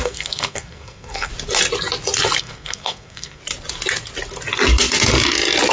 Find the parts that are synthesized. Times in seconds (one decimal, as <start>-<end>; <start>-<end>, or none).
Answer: 0.0-1.3; 2.4-3.4